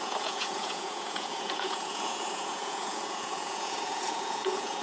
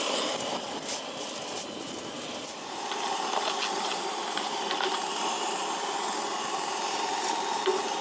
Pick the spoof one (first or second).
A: first